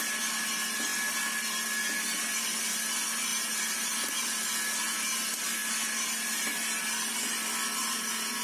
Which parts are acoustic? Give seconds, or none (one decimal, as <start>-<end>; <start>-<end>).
0.0-3.3; 4.1-8.4